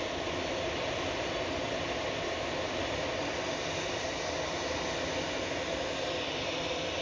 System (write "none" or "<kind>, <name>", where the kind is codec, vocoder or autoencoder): none